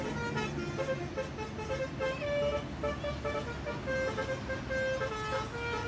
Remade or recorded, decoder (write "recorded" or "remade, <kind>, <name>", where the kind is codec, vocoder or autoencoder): recorded